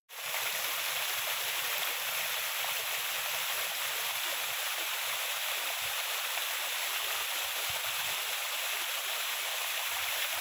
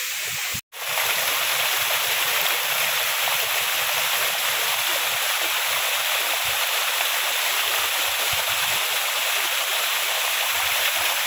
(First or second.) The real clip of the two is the second